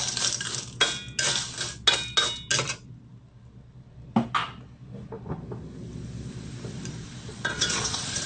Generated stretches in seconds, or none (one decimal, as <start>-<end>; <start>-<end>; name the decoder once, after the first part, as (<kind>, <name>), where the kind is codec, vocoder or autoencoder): 7.3-8.3 (vocoder, Vocos)